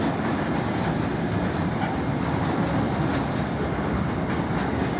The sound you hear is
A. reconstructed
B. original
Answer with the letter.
B